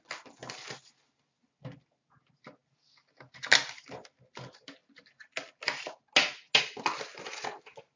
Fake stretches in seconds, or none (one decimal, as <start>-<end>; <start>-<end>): none